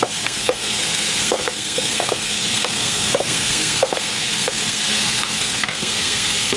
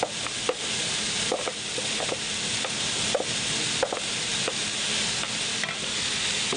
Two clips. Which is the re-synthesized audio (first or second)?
first